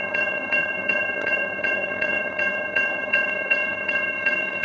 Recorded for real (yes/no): no